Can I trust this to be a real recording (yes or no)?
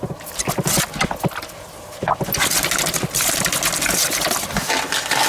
yes